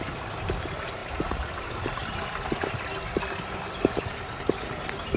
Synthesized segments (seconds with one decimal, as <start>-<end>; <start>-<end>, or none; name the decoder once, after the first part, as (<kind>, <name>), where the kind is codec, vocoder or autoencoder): none